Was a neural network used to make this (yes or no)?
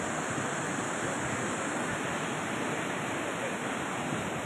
no